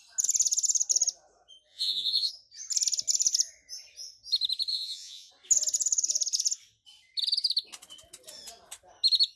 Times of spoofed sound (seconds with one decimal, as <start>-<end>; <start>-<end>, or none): 1.7-2.3; 4.7-5.3